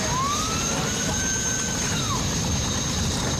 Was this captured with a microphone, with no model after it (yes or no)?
yes